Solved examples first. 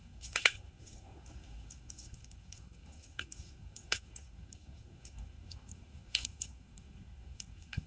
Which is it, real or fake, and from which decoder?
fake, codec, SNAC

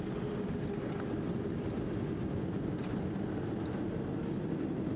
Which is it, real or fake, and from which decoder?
real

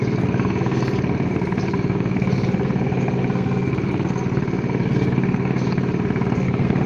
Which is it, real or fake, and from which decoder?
fake, codec, SNAC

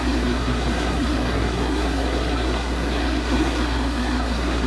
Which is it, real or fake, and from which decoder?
fake, codec, SNAC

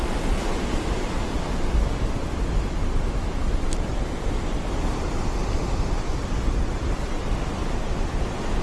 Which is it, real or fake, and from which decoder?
real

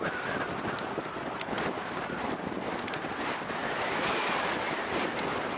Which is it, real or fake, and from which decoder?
real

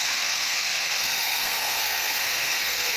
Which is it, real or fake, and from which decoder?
fake, codec, SNAC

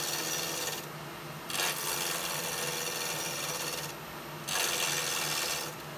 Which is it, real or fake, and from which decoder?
real